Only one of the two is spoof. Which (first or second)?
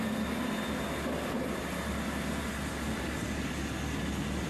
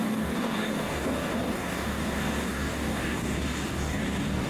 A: second